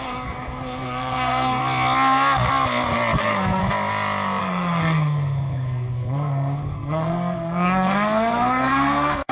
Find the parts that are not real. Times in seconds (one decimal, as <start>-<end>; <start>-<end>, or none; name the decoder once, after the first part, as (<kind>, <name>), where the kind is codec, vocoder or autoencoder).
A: 0.0-1.6 (codec, SNAC); 3.2-3.6; 4.4-9.3